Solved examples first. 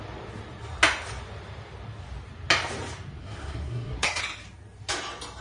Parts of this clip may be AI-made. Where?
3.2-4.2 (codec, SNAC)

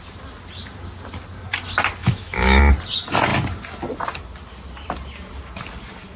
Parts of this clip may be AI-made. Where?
2.0-2.6 (autoencoder, DAC-VAE)

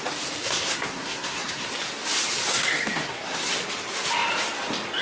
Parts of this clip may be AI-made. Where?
0.4-1.7 (codec, SNAC); 2.5-3.5